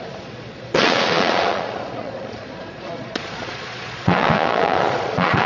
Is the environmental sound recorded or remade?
remade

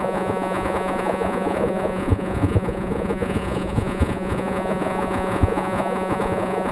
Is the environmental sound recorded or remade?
remade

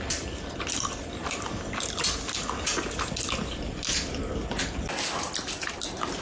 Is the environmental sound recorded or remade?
recorded